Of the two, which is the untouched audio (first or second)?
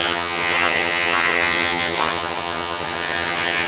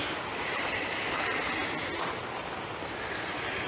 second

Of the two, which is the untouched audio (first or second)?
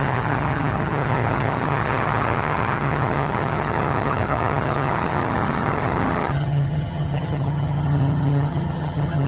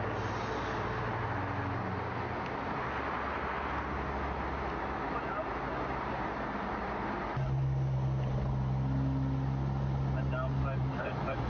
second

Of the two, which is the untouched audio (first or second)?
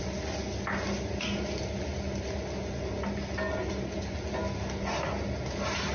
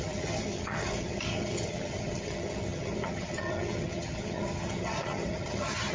first